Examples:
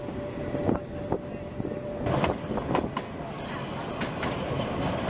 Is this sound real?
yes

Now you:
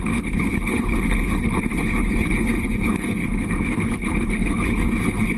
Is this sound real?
no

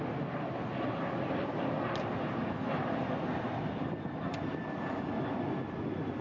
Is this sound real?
yes